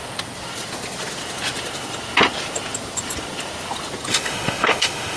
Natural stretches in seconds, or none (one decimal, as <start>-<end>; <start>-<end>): 0.0-4.1